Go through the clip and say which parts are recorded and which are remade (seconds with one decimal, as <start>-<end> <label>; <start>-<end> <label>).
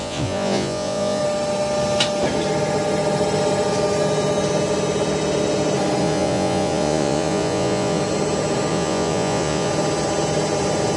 0.0-1.2 remade; 1.2-6.0 recorded; 6.0-8.0 remade; 8.0-8.7 recorded; 8.7-9.7 remade; 9.7-11.0 recorded